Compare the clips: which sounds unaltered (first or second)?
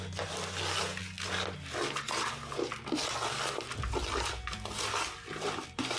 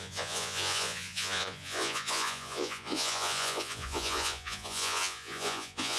first